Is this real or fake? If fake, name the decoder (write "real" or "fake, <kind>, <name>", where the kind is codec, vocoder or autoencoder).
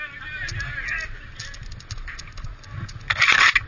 real